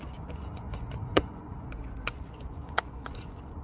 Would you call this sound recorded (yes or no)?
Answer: no